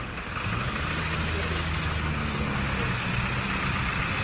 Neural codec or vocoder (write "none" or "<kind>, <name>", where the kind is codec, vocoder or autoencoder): none